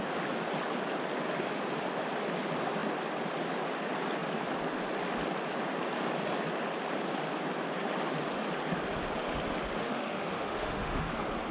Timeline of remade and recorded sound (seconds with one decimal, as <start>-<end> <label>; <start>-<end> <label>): 0.0-9.8 recorded; 9.8-11.1 remade; 11.1-11.5 recorded